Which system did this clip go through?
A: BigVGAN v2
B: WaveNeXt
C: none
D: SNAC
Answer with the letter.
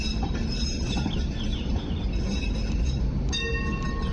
C